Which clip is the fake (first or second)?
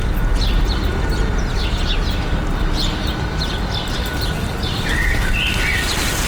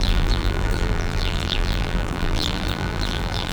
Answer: second